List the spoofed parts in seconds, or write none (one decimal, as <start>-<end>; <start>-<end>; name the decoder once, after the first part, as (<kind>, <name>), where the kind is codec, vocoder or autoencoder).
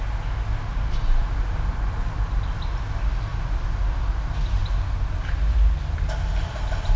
none